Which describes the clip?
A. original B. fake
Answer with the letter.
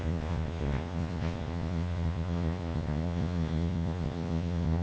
B